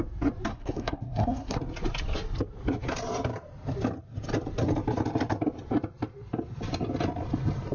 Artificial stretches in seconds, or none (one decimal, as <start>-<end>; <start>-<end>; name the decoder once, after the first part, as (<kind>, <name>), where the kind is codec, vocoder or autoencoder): 0.5-1.6 (codec, SNAC)